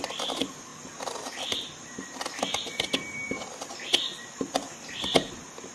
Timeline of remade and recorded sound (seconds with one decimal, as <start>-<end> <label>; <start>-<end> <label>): 0.0-5.7 recorded

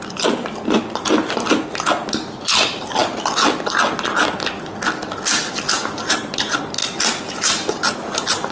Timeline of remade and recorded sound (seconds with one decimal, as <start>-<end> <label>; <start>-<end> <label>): 0.0-8.5 recorded

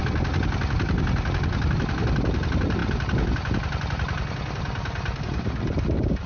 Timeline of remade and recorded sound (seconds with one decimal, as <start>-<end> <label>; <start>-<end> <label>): 0.0-6.3 recorded

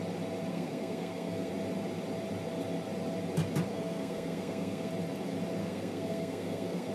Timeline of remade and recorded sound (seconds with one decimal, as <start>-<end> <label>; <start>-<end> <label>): 0.0-0.5 recorded; 0.5-1.5 remade; 1.5-3.7 recorded; 3.7-4.9 remade; 4.9-5.6 recorded; 5.6-6.9 remade

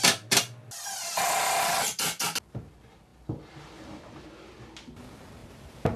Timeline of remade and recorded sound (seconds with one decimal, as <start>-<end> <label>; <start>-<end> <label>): 0.0-1.0 recorded; 1.0-2.2 remade; 2.2-5.4 recorded; 5.4-6.0 remade